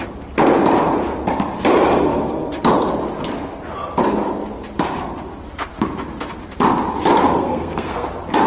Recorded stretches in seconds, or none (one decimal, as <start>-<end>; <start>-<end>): 0.0-7.4; 8.1-8.5